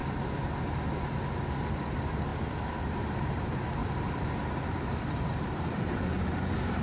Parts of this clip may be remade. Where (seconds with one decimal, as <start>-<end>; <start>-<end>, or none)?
3.8-6.8